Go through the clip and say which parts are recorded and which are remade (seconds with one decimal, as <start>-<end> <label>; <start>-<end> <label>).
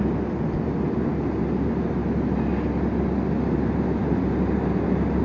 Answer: 0.0-5.2 recorded